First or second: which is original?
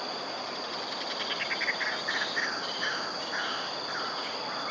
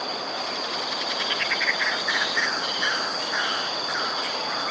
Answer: first